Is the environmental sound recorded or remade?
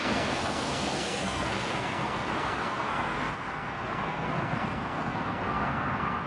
remade